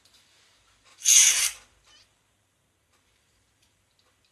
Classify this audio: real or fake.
fake